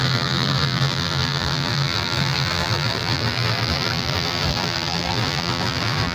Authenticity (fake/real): fake